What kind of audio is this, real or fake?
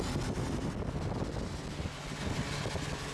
real